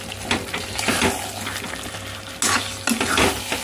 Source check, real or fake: real